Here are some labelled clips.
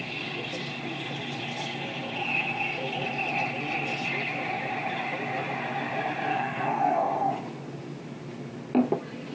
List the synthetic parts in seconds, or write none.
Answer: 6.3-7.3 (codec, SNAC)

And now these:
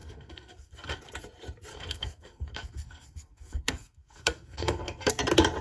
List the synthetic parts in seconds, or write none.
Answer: 0.0-1.0 (codec, SNAC); 1.7-5.1

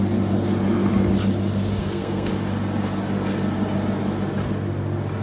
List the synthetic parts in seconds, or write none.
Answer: 1.8-2.3 (codec, SNAC)

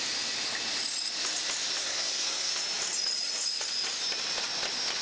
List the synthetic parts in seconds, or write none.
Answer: 1.8-2.5 (codec, SNAC)

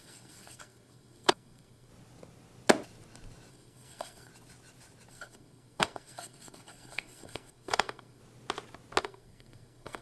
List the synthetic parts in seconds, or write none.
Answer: 0.0-1.9 (codec, SNAC); 3.5-4.3; 5.1-8.2; 9.0-10.0